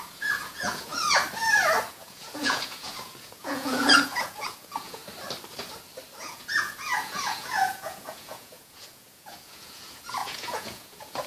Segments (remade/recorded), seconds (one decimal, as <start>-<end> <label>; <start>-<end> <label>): 0.0-0.9 remade; 0.9-1.9 recorded; 1.9-5.0 remade; 5.0-6.2 recorded; 6.2-11.3 remade